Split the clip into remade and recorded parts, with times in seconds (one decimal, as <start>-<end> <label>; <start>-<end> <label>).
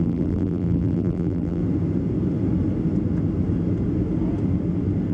0.0-1.6 remade; 1.6-5.1 recorded